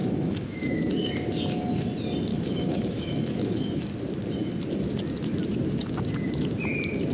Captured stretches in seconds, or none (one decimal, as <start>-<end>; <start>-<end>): 1.1-2.3; 3.8-7.1